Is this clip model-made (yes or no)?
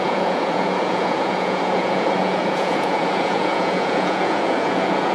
yes